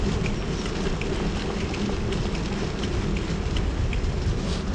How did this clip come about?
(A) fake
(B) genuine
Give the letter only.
B